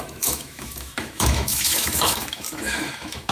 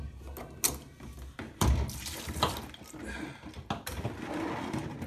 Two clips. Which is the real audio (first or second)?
second